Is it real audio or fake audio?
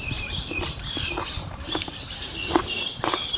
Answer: fake